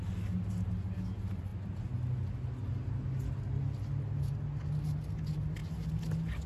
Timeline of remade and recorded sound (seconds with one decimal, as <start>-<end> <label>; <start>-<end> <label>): 0.0-6.5 recorded